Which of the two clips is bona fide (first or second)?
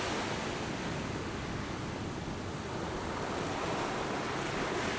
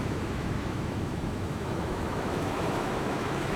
first